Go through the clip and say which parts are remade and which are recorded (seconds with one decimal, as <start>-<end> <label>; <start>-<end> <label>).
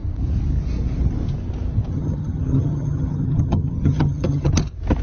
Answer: 0.0-1.9 recorded; 1.9-4.5 remade; 4.5-5.0 recorded